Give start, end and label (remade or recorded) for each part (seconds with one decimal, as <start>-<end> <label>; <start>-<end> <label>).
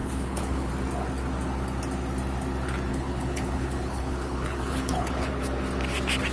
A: 0.0-0.7 remade; 0.7-2.9 recorded; 2.9-5.3 remade; 5.3-6.3 recorded